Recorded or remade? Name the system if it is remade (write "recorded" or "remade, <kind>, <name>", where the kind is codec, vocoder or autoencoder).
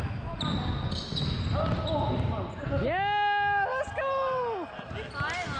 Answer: recorded